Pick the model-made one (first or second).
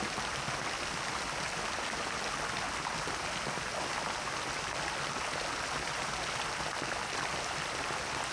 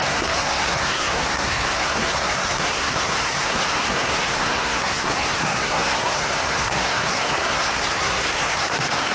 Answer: second